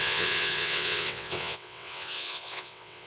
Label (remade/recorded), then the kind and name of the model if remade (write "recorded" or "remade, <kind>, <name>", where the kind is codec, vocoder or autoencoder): remade, vocoder, WaveNeXt